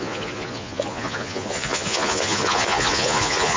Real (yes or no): no